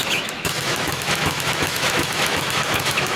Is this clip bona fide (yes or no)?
no